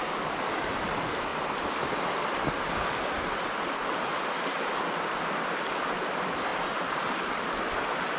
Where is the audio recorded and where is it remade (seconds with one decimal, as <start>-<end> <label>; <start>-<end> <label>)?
0.0-8.2 recorded